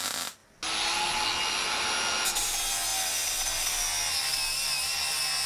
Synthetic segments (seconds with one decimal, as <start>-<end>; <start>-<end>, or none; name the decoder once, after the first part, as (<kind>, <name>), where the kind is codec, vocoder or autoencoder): none